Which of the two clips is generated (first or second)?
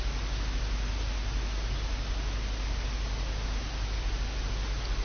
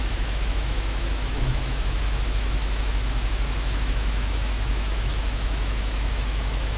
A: second